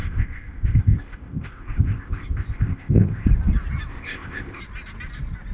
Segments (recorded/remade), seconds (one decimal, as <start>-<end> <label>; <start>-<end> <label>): 0.0-3.3 remade; 3.3-3.9 recorded; 3.9-4.6 remade; 4.6-5.5 recorded